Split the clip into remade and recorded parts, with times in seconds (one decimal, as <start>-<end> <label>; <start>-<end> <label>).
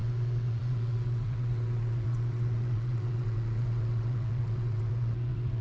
0.0-5.6 remade